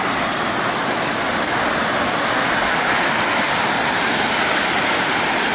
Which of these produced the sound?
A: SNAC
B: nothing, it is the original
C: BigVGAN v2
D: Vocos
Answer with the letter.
B